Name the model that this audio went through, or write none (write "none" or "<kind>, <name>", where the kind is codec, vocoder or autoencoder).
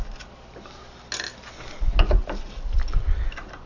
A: none